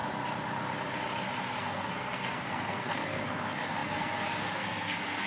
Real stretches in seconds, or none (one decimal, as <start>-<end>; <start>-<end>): 0.0-1.6